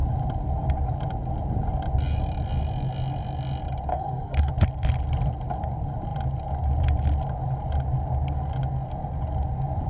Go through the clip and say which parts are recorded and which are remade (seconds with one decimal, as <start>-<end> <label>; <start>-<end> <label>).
0.0-3.9 recorded; 3.9-4.5 remade; 4.5-9.9 recorded